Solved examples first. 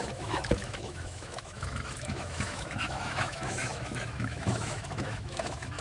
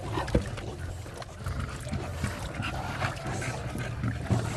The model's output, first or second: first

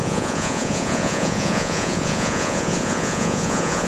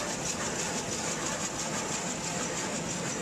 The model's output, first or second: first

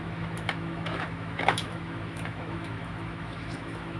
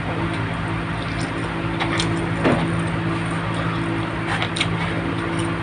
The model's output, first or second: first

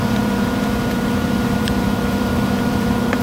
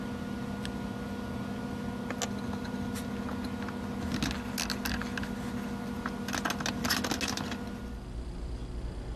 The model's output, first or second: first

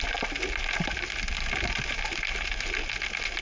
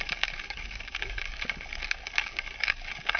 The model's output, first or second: second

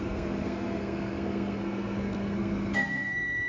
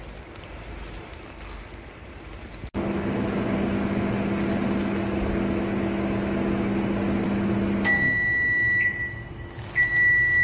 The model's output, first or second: first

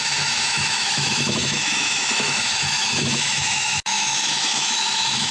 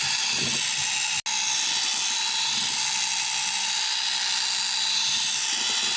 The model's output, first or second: first